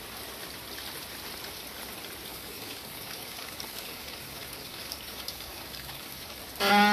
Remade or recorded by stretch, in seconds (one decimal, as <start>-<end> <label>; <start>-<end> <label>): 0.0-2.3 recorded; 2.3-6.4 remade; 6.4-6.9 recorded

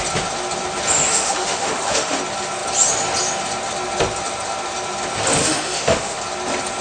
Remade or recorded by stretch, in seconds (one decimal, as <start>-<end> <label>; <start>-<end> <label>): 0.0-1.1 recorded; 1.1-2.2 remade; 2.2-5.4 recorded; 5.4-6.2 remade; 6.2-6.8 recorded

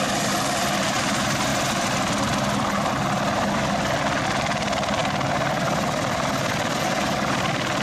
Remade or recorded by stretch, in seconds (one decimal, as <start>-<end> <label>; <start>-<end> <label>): 0.0-7.8 recorded

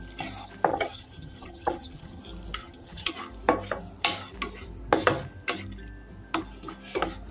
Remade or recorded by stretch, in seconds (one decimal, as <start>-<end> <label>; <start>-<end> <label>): 0.0-0.7 recorded; 0.7-2.2 remade; 2.2-2.6 recorded; 2.6-3.1 remade; 3.1-7.3 recorded

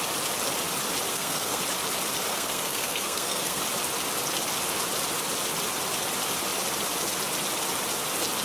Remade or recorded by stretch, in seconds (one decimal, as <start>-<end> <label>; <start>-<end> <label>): 0.0-1.1 recorded; 1.1-1.6 remade; 1.6-2.3 recorded; 2.3-3.6 remade; 3.6-8.4 recorded

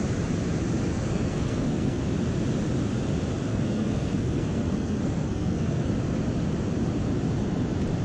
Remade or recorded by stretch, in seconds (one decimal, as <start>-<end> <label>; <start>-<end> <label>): 0.0-0.9 recorded; 0.9-2.0 remade; 2.0-3.5 recorded; 3.5-5.9 remade; 5.9-8.0 recorded